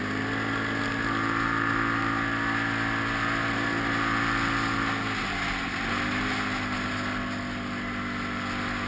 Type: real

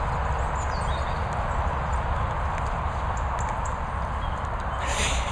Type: real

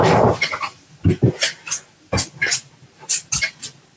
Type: real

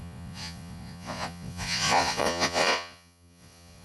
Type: fake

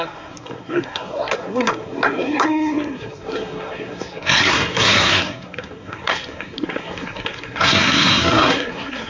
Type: fake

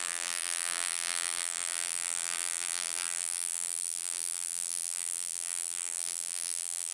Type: fake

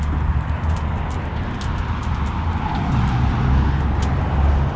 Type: real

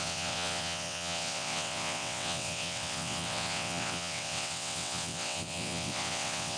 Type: fake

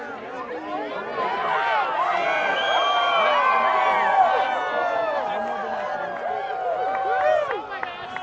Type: real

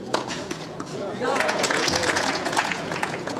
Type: fake